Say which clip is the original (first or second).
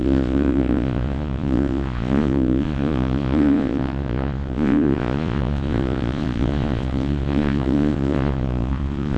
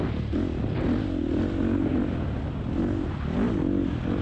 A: second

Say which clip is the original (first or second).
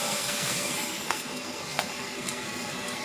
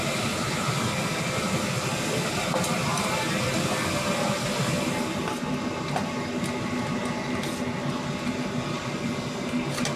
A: second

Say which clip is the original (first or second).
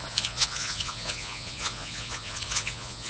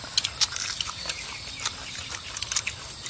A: second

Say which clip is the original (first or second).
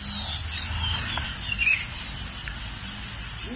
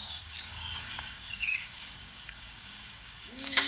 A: first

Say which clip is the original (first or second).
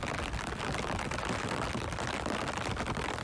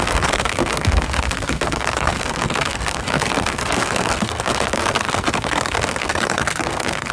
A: first